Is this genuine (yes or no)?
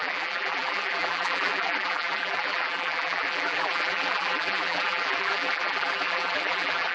no